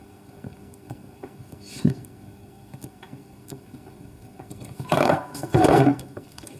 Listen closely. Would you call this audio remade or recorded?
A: remade